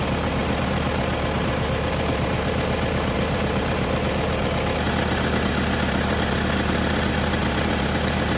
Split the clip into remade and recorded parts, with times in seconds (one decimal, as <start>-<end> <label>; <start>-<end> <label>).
0.0-8.4 recorded